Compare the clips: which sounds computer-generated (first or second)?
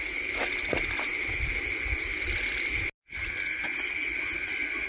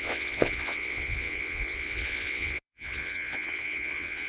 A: second